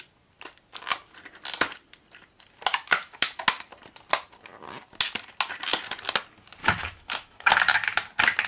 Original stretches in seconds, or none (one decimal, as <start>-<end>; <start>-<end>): 0.0-2.7; 3.4-6.6; 7.5-8.5